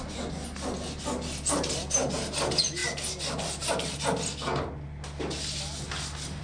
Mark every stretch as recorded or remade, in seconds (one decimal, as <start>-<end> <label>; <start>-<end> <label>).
0.0-6.4 recorded